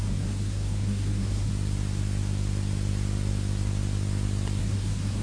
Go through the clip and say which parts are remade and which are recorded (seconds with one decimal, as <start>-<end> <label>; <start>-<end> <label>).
0.0-1.5 remade; 1.5-4.6 recorded; 4.6-5.2 remade